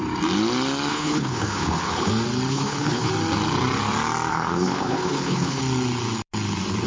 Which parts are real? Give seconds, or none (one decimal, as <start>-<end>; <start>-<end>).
0.0-0.9; 2.1-2.5; 3.1-4.3; 5.6-6.9